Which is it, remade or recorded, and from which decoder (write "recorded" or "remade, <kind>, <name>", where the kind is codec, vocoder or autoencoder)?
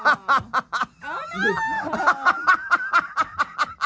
recorded